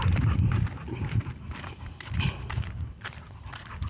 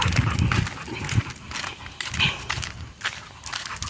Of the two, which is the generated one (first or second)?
first